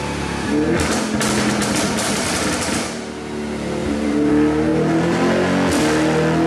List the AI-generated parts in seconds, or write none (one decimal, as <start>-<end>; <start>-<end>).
3.8-4.3; 4.7-5.2